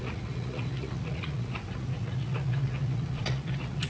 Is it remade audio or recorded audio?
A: remade